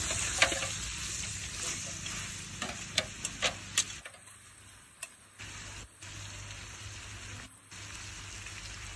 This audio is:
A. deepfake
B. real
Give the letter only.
B